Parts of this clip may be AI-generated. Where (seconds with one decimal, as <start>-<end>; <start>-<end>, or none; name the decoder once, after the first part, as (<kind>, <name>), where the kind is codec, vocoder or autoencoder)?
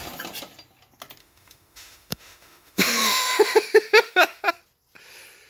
1.2-4.5 (autoencoder, DAC-VAE)